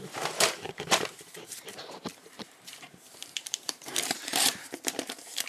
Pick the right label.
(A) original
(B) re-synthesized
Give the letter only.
B